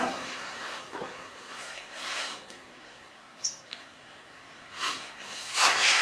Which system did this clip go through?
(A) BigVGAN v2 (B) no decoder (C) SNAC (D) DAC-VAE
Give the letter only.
C